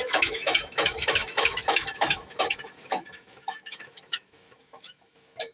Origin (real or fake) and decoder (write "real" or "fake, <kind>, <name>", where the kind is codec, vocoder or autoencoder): fake, autoencoder, DAC-VAE